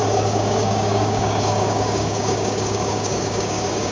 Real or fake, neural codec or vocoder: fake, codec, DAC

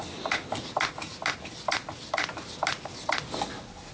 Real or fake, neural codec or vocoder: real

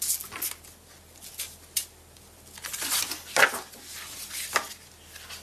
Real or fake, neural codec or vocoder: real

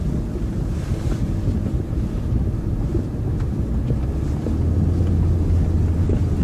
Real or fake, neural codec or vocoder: real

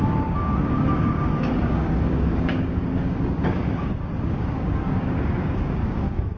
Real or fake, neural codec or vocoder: fake, codec, DAC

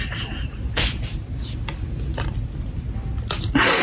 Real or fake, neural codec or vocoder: real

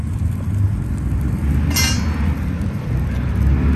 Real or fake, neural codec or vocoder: real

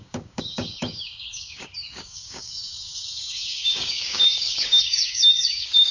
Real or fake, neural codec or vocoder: fake, codec, DAC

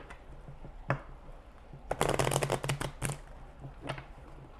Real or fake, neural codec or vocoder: real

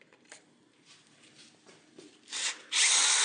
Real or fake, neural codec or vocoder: real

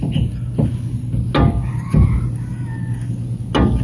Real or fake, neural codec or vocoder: real